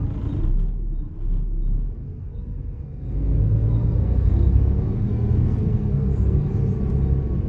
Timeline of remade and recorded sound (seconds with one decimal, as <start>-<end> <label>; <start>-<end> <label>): 0.0-2.0 recorded; 2.0-6.5 remade; 6.5-7.5 recorded